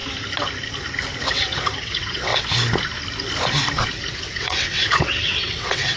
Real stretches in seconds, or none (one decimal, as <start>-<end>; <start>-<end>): 0.0-1.3; 2.3-4.1